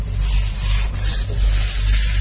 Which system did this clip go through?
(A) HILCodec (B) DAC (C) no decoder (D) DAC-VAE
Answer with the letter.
C